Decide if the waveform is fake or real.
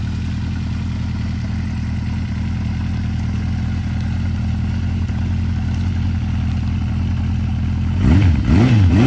real